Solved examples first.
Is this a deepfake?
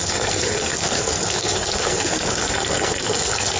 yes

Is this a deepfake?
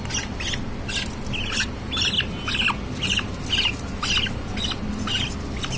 no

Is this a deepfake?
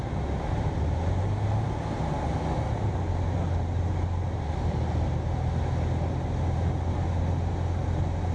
no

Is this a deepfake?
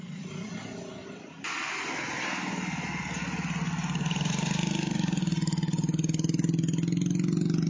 no